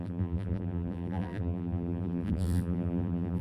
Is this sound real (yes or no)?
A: no